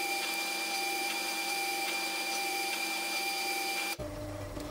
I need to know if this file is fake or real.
fake